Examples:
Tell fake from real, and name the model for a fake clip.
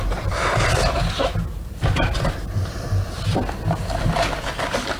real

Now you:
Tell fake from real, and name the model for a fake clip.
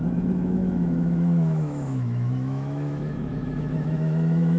fake, autoencoder, DAC-VAE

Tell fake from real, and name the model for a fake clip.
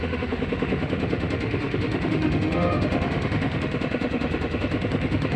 fake, autoencoder, DAC-VAE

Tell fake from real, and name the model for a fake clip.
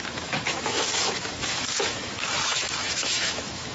fake, autoencoder, DAC-VAE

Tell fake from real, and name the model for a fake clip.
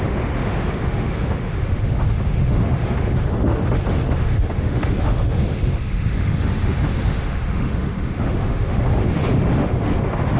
fake, autoencoder, DAC-VAE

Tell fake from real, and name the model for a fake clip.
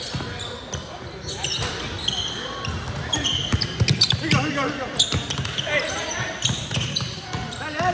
real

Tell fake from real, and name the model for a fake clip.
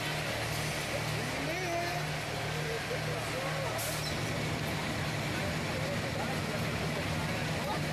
real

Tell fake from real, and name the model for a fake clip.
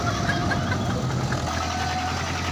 real